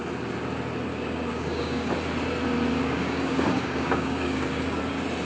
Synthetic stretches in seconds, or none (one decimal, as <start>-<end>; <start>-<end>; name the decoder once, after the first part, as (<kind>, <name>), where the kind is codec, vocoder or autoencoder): 0.9-1.9 (codec, DAC); 2.8-4.8